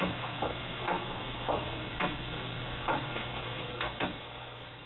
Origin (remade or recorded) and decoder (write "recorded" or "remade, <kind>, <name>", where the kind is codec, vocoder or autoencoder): remade, codec, SNAC